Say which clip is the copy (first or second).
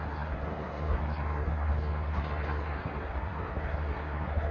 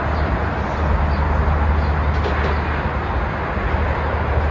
first